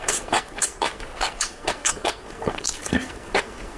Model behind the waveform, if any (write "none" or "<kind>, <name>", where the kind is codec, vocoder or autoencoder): codec, SNAC